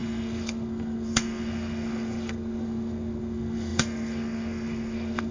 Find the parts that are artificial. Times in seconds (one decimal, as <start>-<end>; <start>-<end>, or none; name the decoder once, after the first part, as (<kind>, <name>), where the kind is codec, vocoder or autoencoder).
0.0-5.3 (codec, SNAC)